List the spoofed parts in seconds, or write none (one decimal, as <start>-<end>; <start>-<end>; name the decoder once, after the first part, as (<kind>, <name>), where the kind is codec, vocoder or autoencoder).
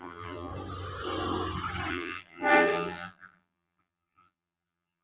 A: 0.0-0.5 (vocoder, BigVGAN v2); 1.9-5.0